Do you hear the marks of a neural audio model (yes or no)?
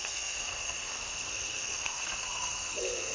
yes